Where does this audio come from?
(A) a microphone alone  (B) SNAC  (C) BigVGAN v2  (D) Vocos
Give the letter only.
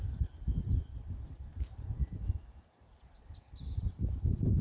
C